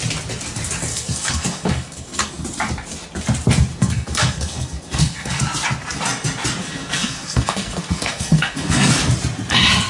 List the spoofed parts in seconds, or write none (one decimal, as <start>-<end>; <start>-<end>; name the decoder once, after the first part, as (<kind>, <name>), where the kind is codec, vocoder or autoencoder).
0.9-2.3 (codec, SNAC); 3.7-5.4; 6.6-8.9